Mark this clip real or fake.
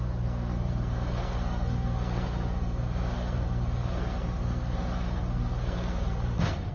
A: fake